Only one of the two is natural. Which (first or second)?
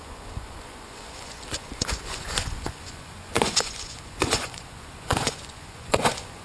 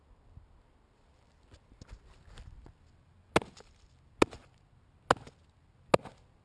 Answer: second